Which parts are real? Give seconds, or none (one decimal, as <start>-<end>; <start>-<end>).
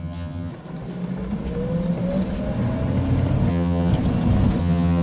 0.5-3.5; 3.9-4.6